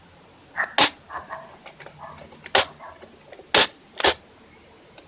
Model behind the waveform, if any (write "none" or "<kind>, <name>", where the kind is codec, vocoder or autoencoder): none